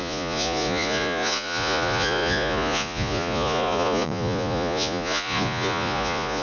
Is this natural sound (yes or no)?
no